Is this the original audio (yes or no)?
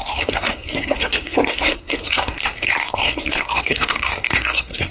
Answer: no